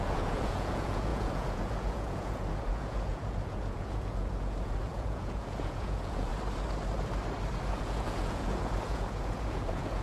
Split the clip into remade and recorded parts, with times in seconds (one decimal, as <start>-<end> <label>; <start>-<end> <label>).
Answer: 0.0-6.3 remade; 6.3-7.7 recorded; 7.7-10.0 remade